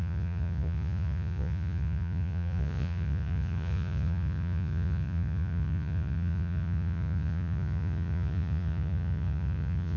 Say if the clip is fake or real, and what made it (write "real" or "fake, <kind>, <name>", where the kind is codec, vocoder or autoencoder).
fake, vocoder, Vocos